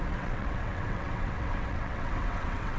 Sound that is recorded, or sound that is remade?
remade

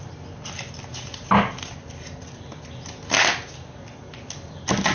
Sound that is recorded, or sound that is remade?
recorded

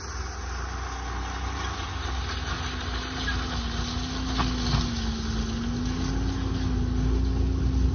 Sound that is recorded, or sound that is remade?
recorded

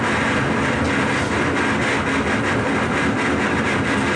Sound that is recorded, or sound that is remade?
recorded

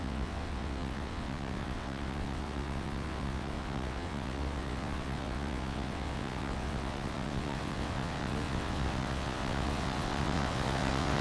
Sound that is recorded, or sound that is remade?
remade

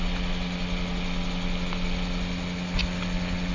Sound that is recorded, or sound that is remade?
recorded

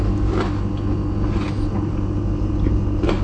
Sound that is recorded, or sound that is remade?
recorded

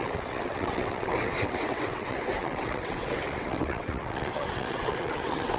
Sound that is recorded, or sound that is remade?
remade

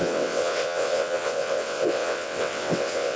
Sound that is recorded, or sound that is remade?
remade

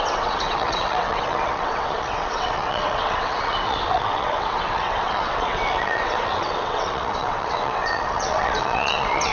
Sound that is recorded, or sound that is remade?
remade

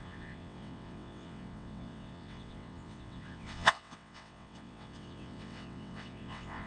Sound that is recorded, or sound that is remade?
remade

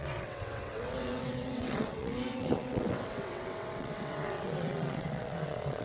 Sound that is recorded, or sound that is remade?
remade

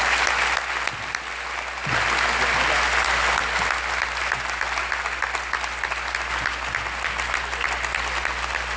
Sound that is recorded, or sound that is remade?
recorded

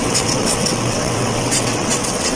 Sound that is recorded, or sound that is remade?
remade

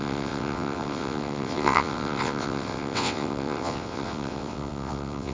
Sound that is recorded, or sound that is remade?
remade